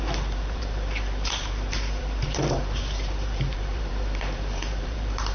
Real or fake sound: fake